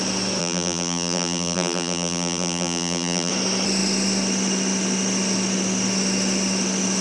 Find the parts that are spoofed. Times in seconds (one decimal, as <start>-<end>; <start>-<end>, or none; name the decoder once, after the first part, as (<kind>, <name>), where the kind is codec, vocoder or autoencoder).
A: 0.4-3.3 (vocoder, BigVGAN v2)